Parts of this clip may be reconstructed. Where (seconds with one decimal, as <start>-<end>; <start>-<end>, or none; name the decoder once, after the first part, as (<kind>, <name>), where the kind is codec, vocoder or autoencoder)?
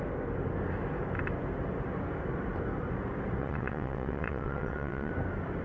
3.4-5.1 (vocoder, WaveNeXt)